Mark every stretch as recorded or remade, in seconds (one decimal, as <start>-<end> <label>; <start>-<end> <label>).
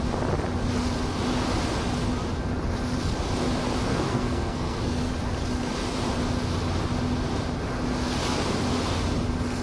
0.0-3.9 recorded; 3.9-5.1 remade; 5.1-9.6 recorded